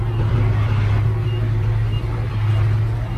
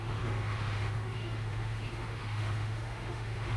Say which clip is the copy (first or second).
second